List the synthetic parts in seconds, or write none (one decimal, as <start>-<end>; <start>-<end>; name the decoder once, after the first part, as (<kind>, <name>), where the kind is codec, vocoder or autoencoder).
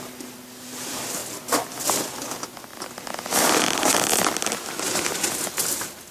none